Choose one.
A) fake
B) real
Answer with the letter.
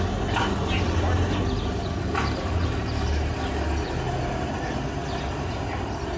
B